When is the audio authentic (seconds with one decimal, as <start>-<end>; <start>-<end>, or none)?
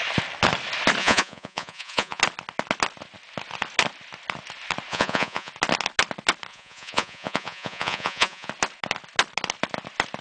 0.0-1.0; 2.2-4.9; 5.5-6.5; 8.5-10.2